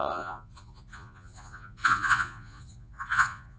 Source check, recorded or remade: remade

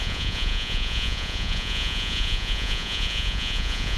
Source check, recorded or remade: remade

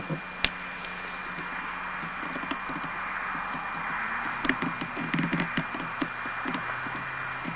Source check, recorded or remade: recorded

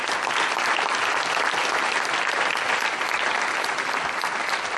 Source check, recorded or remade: recorded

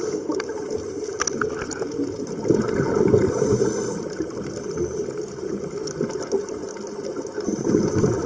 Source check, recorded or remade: recorded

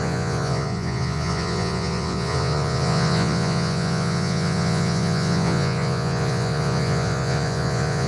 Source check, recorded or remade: remade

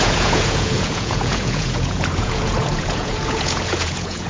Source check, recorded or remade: remade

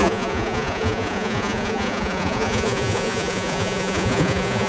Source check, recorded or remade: remade